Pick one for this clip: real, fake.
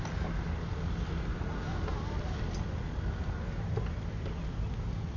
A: real